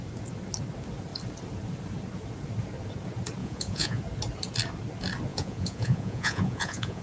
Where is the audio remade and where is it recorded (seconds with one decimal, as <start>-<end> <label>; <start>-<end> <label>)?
0.0-3.4 recorded; 3.4-4.0 remade; 4.0-5.3 recorded; 5.3-7.0 remade

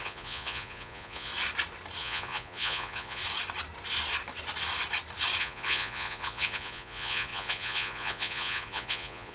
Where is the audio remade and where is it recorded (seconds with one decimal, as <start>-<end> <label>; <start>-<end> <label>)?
0.0-1.3 remade; 1.3-2.0 recorded; 2.0-3.2 remade; 3.2-5.4 recorded; 5.4-9.3 remade

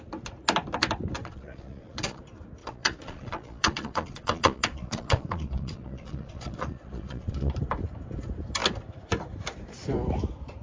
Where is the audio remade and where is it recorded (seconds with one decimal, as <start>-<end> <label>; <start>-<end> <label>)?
0.0-1.2 recorded; 1.2-2.2 remade; 2.2-2.6 recorded; 2.6-7.5 remade; 7.5-10.6 recorded